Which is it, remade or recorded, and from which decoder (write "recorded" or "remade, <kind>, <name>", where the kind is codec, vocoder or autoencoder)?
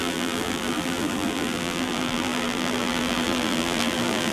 remade, vocoder, BigVGAN v2